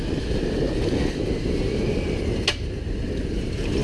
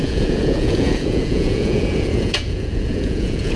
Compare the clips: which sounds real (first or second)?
first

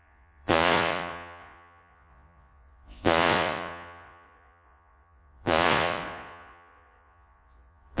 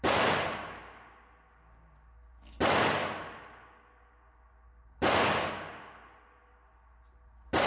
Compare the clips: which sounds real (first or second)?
second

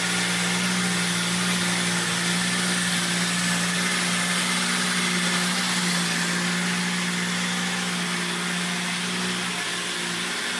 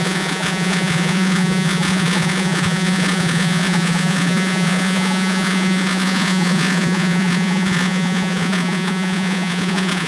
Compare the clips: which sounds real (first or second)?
first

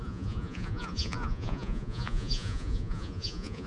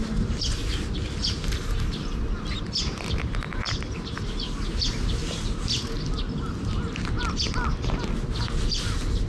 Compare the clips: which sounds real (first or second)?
second